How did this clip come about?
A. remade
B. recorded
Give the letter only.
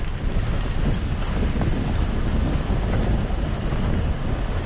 B